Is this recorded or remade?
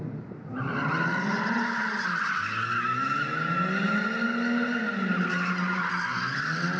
recorded